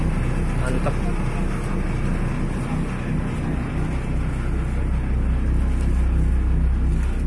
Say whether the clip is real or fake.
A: real